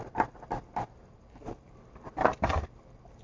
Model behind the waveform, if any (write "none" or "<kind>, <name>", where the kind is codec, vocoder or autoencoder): none